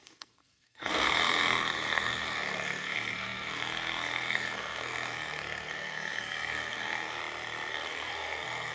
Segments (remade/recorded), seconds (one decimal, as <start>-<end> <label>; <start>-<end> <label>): 0.0-7.2 remade; 7.2-7.7 recorded; 7.7-8.7 remade

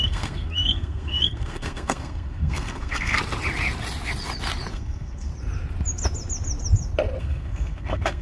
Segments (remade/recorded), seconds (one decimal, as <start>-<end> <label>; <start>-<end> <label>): 0.0-3.2 remade; 3.2-4.7 recorded; 4.7-5.3 remade; 5.3-7.2 recorded; 7.2-8.2 remade